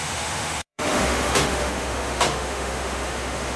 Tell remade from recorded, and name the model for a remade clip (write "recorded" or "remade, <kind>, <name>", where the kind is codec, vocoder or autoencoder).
remade, autoencoder, DAC-VAE